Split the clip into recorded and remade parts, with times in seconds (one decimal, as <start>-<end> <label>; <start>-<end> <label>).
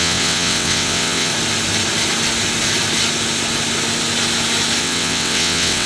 0.0-1.3 remade; 1.3-4.8 recorded; 4.8-5.9 remade